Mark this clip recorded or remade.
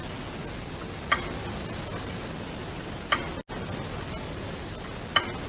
recorded